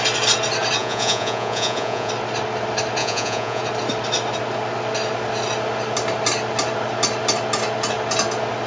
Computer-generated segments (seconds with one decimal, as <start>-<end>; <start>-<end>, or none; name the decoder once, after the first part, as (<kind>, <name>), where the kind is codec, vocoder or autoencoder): 0.8-2.1 (vocoder, Vocos); 3.0-3.6

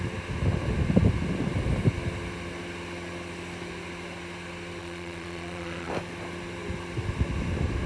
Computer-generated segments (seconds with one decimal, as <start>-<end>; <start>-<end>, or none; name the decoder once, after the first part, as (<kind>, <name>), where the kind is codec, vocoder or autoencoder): 4.8-5.9 (vocoder, Vocos)

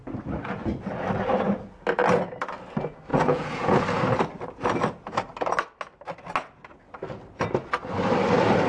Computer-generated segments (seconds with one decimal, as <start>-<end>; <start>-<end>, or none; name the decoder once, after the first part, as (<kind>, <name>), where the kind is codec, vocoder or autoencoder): 3.1-3.8 (vocoder, Vocos)

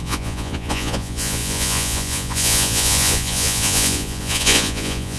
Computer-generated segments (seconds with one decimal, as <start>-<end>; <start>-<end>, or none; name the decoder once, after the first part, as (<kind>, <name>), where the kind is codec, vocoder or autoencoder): 0.0-5.2 (vocoder, Vocos)

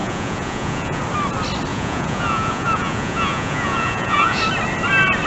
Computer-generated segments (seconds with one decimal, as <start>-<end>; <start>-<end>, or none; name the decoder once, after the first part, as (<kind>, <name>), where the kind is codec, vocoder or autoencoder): 0.0-1.0 (vocoder, Vocos); 1.7-4.4